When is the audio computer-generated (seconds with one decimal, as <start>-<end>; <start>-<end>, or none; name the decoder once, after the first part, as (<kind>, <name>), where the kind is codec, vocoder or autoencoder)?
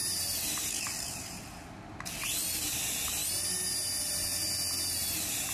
none